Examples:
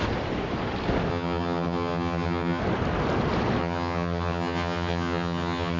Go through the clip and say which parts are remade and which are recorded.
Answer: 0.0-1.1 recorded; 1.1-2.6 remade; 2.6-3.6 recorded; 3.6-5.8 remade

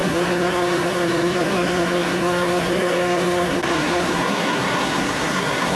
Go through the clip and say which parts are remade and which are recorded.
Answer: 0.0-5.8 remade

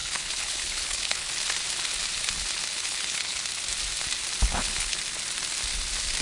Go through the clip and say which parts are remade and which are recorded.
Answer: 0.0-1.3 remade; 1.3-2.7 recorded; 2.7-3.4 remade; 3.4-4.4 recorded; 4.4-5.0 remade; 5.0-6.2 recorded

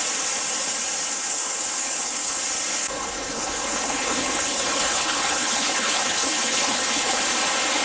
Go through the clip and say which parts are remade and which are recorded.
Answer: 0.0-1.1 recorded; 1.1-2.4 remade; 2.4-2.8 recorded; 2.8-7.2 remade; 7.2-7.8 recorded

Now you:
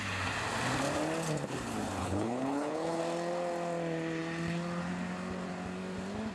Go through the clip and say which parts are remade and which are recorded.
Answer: 0.0-2.0 recorded; 2.0-3.0 remade; 3.0-6.3 recorded

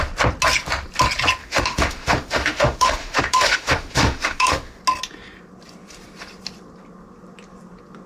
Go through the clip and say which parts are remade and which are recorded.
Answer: 0.0-1.4 recorded; 1.4-4.8 remade; 4.8-8.1 recorded

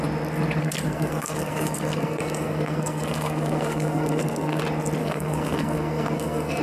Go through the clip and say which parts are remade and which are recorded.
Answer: 0.0-0.6 recorded; 0.6-4.6 remade; 4.6-5.0 recorded; 5.0-6.6 remade

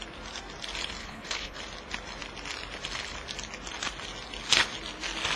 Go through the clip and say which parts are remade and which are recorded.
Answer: 0.0-1.0 recorded; 1.0-1.6 remade; 1.6-5.4 recorded